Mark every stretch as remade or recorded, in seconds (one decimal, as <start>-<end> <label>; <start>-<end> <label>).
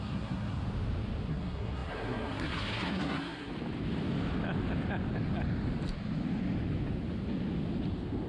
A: 0.0-0.6 remade; 0.6-1.3 recorded; 1.3-3.5 remade; 3.5-8.3 recorded